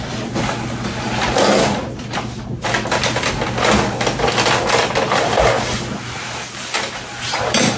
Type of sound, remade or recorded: recorded